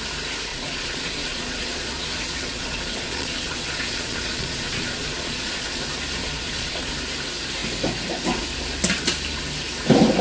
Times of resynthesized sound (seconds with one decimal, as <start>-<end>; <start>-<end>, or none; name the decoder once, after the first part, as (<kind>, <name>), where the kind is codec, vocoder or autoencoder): 0.5-5.8 (vocoder, Vocos); 6.2-6.9